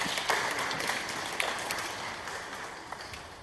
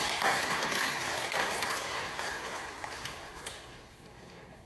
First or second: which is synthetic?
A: second